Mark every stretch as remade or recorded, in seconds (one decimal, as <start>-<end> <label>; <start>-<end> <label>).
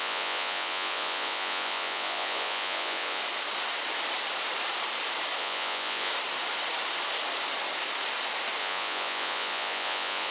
0.0-3.2 remade; 3.2-5.4 recorded; 5.4-6.1 remade; 6.1-8.6 recorded; 8.6-10.3 remade